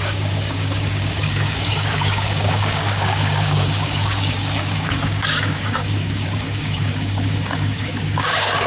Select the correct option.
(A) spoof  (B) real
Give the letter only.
A